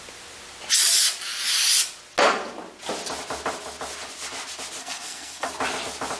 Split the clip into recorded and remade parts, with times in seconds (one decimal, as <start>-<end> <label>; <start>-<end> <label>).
0.0-4.8 recorded; 4.8-5.5 remade; 5.5-6.2 recorded

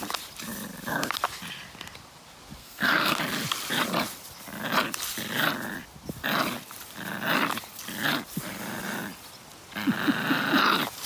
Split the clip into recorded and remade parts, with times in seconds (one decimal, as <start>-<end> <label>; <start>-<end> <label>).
0.0-2.6 recorded; 2.6-3.2 remade; 3.2-11.1 recorded

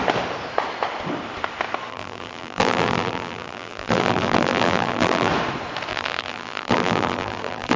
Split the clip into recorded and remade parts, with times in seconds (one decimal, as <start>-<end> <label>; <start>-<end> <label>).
0.0-1.9 recorded; 1.9-5.3 remade; 5.3-5.9 recorded; 5.9-7.8 remade

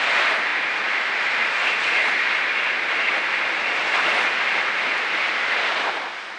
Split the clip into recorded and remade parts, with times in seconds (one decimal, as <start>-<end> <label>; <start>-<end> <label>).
0.0-6.4 recorded

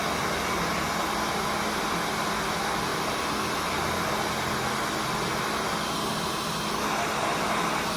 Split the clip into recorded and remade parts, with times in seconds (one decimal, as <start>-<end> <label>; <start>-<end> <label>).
0.0-8.0 recorded

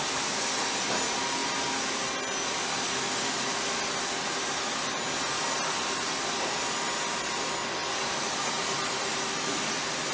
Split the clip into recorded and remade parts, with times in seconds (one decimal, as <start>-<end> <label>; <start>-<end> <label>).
0.0-10.1 recorded

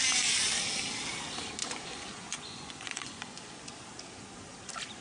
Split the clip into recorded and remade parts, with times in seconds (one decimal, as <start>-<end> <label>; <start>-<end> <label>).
0.0-1.6 recorded; 1.6-3.6 remade; 3.6-5.0 recorded